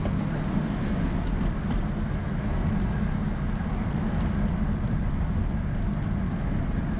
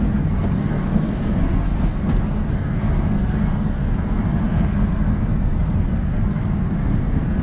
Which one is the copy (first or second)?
second